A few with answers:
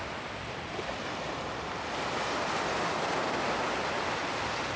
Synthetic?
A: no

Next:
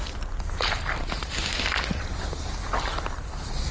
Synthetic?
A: no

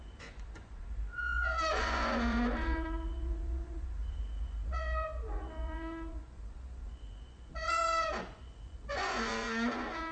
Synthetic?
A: yes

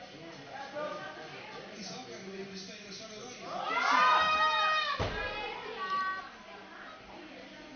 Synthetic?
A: no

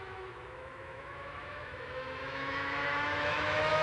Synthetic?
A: yes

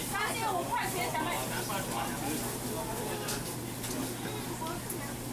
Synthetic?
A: no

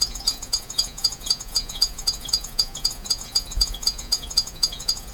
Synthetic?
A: yes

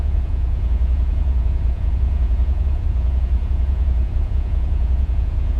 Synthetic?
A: yes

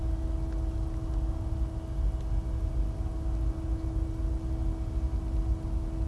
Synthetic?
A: no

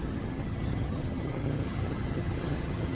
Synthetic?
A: yes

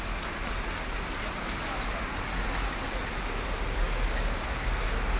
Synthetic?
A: no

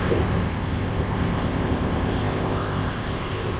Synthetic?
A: yes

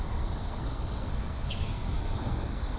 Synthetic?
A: yes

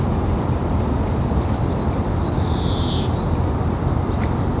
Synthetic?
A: no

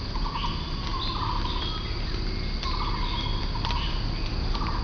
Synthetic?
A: no